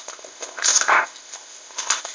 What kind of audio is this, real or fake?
fake